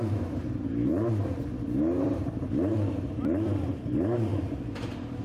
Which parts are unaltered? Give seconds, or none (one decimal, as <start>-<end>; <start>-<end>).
0.9-2.0; 4.3-5.2